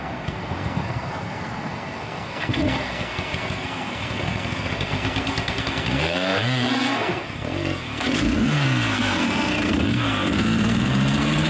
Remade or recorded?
remade